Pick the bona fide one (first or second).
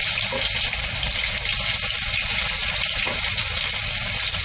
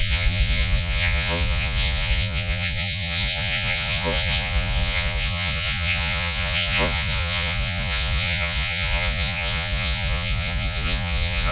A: first